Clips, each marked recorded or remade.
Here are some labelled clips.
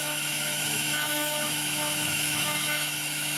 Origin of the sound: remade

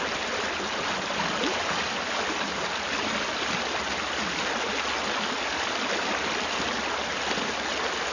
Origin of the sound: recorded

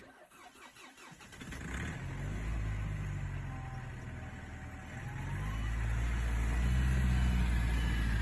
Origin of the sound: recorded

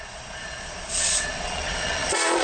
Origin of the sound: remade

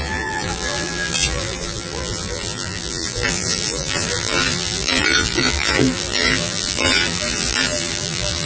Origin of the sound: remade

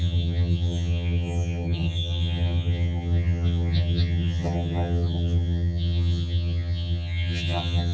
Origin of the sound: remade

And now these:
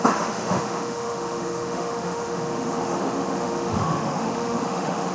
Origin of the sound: remade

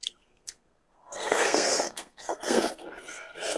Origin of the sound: remade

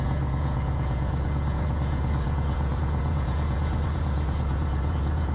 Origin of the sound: remade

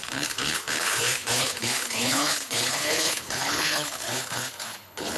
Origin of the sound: remade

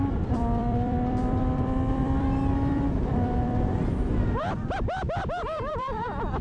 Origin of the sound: remade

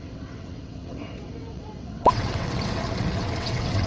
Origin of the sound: remade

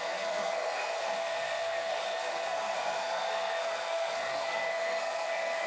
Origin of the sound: remade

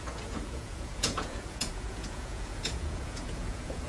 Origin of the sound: remade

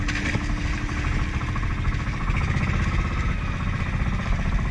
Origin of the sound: recorded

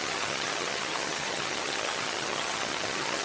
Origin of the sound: remade